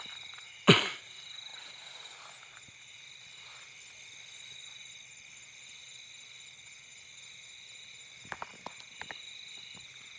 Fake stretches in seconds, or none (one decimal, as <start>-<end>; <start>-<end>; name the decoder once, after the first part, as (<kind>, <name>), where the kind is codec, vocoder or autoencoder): none